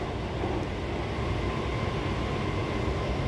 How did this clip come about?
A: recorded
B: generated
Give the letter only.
A